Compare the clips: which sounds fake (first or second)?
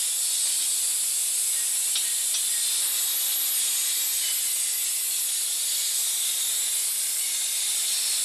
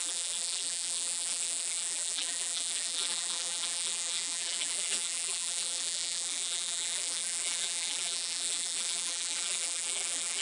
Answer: second